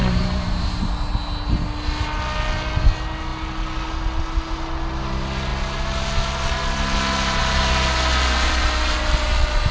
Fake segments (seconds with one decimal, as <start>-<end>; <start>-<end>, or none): 0.0-0.9